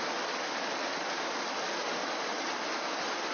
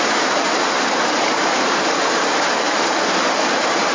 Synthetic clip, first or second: second